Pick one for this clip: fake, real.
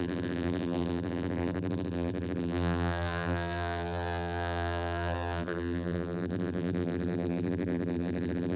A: fake